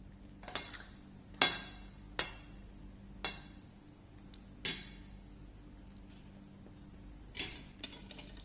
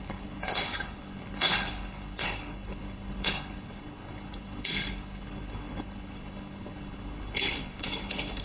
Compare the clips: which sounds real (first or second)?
first